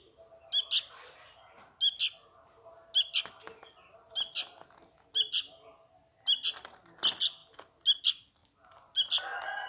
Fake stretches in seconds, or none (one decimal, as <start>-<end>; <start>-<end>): none